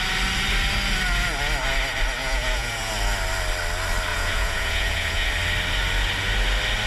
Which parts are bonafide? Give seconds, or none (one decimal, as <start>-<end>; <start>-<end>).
0.0-2.2; 2.9-4.1; 5.3-6.9

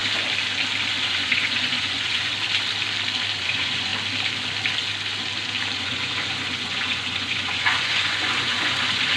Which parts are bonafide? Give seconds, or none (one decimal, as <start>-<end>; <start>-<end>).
0.0-0.8; 2.3-3.4; 3.9-5.8

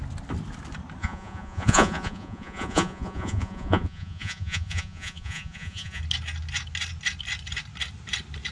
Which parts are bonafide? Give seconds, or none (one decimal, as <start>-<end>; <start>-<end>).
0.0-1.0; 6.0-8.5